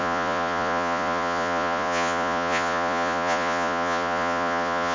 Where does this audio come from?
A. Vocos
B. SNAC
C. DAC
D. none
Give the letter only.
A